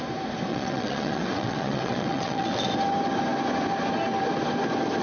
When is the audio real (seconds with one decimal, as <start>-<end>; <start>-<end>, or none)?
0.0-0.5; 2.7-5.0